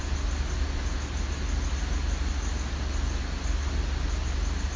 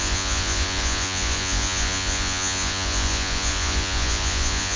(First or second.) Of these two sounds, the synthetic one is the second